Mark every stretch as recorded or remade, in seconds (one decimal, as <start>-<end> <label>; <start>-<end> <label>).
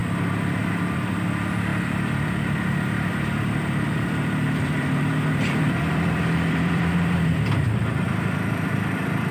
0.0-0.6 recorded; 0.6-9.3 remade